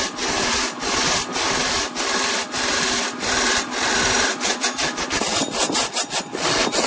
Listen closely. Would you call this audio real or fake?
real